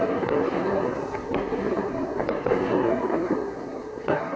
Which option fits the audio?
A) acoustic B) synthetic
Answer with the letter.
B